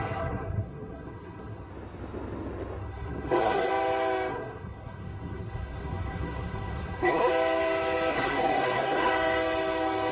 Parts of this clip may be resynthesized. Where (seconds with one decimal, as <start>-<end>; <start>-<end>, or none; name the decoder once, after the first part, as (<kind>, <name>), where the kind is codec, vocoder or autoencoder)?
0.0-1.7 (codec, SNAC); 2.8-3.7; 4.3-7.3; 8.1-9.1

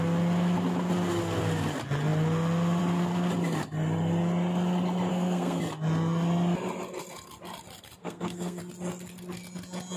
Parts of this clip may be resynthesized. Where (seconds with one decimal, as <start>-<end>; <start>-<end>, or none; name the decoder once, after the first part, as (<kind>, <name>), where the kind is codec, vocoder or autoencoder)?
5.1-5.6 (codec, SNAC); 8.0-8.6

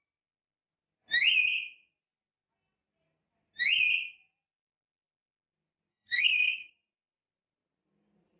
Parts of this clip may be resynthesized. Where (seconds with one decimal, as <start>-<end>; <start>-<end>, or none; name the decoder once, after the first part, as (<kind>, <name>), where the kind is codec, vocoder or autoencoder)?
5.9-6.7 (codec, SNAC)